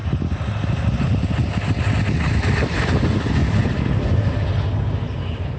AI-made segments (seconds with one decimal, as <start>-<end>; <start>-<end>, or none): none